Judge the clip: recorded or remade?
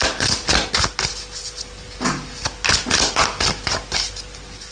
recorded